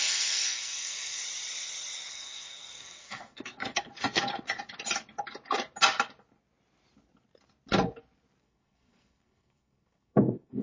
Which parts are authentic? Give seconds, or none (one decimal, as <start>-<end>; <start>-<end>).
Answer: 1.2-2.1; 4.3-8.4